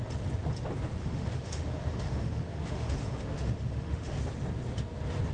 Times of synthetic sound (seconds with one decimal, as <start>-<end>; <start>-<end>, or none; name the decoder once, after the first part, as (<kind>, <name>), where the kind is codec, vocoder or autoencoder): 1.0-4.2 (autoencoder, DAC-VAE)